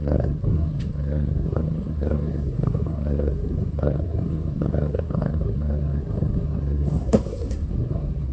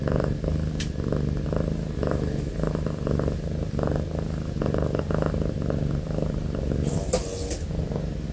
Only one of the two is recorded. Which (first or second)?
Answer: second